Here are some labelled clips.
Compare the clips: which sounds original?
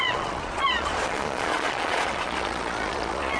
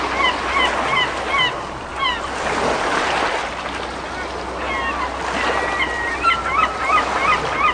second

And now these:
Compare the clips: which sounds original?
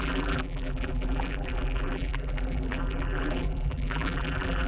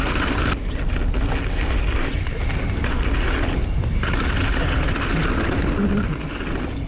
second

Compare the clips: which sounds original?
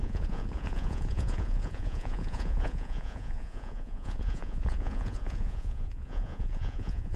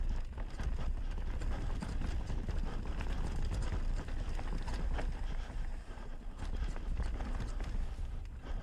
second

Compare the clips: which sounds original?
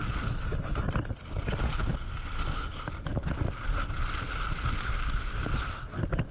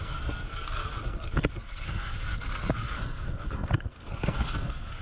first